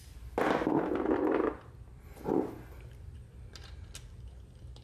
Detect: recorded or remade recorded